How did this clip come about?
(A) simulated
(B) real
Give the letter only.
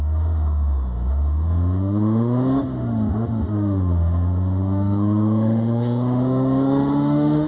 A